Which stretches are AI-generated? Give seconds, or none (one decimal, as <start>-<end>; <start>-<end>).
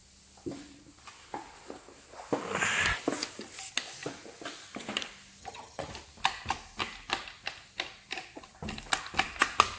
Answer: 5.4-5.9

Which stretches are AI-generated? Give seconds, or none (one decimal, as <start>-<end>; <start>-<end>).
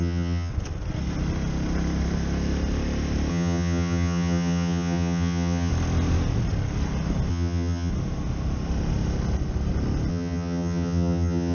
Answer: 0.0-0.5; 3.3-5.7; 7.3-7.9; 10.1-11.5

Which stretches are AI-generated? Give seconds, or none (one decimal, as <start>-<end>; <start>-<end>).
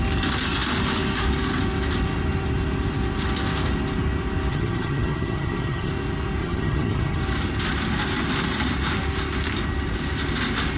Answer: 4.5-5.9; 6.4-7.2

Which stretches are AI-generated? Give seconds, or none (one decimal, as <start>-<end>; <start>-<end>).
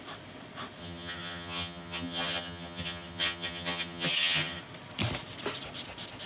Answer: 0.8-4.6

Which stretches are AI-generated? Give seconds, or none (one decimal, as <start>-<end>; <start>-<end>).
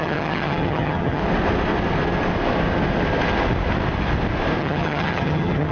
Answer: 0.0-1.2; 4.6-5.7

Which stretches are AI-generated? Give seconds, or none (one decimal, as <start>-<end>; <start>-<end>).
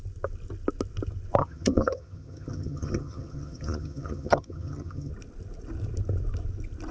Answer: 1.4-5.1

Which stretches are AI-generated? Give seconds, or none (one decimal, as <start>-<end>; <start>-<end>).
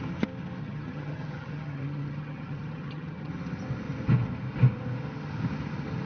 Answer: 0.6-3.3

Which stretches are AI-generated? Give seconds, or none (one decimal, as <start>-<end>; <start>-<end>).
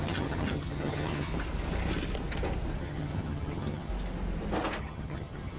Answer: 0.0-1.3; 2.8-3.9; 4.8-5.6